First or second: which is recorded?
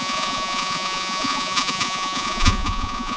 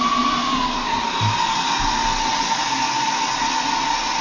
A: second